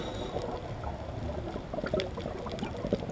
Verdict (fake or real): real